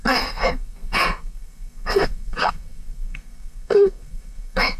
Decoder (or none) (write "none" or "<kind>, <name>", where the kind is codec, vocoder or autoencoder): codec, SNAC